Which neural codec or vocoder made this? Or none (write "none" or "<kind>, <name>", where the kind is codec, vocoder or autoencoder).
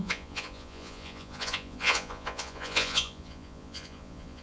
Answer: vocoder, Vocos